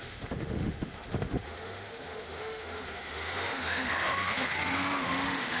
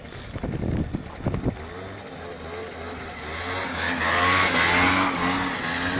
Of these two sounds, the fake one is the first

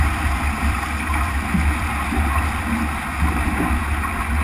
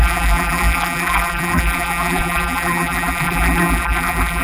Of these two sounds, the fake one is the second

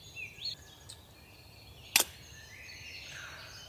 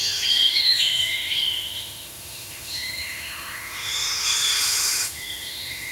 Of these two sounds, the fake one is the second